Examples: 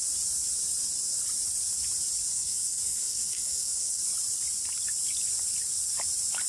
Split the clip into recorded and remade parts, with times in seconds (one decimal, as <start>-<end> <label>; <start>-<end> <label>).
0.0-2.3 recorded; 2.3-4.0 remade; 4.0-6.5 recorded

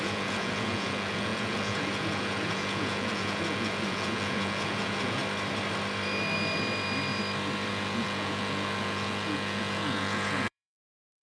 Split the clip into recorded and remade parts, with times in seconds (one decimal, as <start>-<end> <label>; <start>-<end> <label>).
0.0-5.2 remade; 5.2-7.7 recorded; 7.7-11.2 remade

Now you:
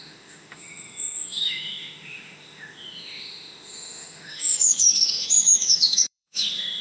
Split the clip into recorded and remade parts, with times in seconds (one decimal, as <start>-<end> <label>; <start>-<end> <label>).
0.0-6.8 remade

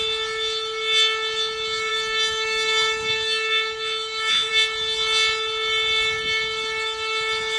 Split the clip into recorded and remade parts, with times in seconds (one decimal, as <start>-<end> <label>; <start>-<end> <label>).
0.0-1.9 recorded; 1.9-4.5 remade; 4.5-7.6 recorded

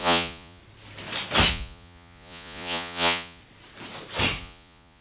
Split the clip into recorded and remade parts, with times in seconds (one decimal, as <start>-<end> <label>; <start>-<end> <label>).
0.0-0.6 remade; 0.6-1.5 recorded; 1.5-3.4 remade; 3.4-4.4 recorded; 4.4-5.0 remade

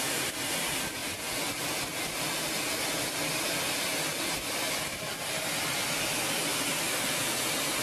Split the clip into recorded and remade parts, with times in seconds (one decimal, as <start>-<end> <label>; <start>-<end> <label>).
0.0-7.8 recorded

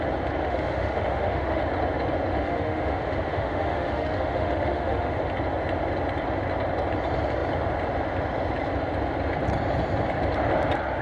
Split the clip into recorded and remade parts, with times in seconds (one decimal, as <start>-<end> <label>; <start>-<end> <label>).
0.0-0.4 recorded; 0.4-1.6 remade; 1.6-2.3 recorded; 2.3-5.2 remade; 5.2-11.0 recorded